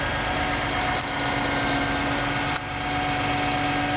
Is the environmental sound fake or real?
real